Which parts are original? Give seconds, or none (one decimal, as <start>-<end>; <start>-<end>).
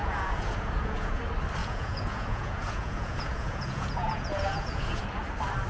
1.2-1.6; 5.0-5.7